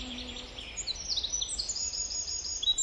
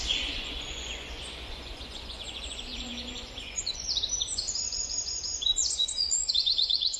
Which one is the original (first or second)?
first